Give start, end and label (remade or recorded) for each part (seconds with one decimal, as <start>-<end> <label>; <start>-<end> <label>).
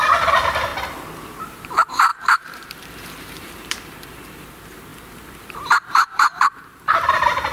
0.0-0.7 remade; 0.7-1.4 recorded; 1.4-7.5 remade